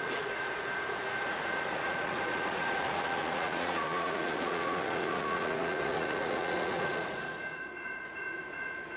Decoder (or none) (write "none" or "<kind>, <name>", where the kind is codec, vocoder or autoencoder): vocoder, Vocos